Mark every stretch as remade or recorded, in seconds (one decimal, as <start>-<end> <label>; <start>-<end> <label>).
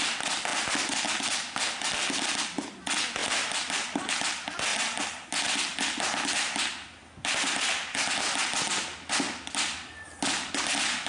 0.0-0.5 recorded; 0.5-1.2 remade; 1.2-3.2 recorded; 3.2-4.1 remade; 4.1-11.1 recorded